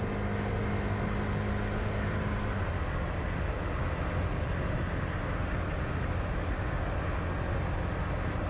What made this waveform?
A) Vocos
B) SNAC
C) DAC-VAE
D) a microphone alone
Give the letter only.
D